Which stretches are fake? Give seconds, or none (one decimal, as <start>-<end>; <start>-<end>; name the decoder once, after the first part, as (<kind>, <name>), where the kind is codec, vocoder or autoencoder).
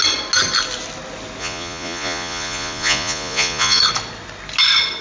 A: 1.4-3.8 (vocoder, Vocos)